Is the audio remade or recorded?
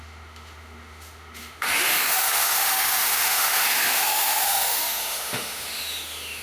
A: remade